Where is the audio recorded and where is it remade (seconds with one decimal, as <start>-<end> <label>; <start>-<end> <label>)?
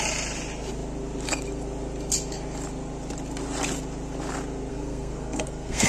0.0-4.7 recorded; 4.7-5.9 remade